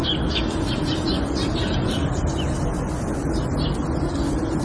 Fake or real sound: real